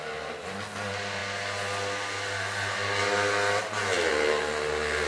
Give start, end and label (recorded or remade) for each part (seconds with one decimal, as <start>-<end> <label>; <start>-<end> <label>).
0.0-5.1 recorded